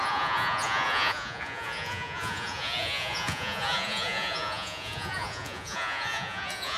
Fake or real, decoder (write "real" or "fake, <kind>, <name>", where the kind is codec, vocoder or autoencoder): fake, vocoder, Vocos